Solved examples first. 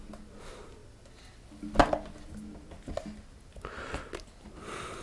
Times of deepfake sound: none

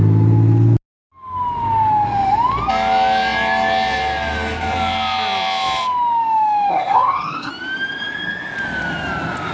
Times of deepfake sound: 6.7-7.5

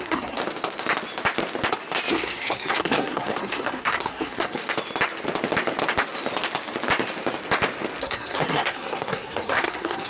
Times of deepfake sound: 0.0-0.4; 2.1-4.6; 8.0-10.1

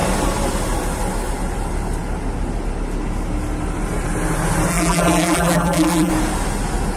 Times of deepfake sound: 4.7-6.1